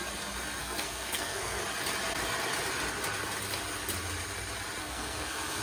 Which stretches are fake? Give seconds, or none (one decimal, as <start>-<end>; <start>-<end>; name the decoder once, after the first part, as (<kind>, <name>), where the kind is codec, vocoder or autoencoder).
0.6-1.6 (codec, SNAC); 4.8-5.6